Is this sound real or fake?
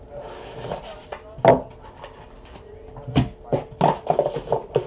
real